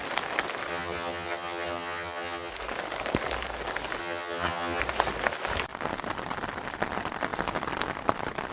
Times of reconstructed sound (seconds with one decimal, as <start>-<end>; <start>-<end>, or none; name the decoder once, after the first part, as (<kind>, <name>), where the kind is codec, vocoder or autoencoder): 0.7-2.5 (vocoder, HiFi-GAN); 4.0-4.8